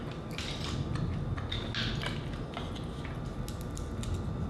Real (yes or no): yes